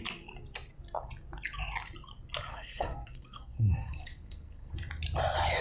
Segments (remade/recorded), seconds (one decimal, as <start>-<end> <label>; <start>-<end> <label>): 0.0-2.5 recorded; 2.5-4.7 remade; 4.7-5.6 recorded